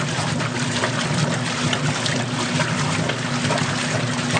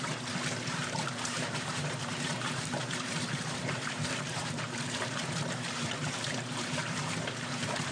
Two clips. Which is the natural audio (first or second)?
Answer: first